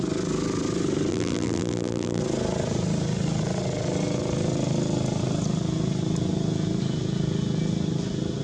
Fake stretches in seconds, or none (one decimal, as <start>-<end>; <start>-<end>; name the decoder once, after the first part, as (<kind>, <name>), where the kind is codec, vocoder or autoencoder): 1.1-2.2 (vocoder, BigVGAN v2)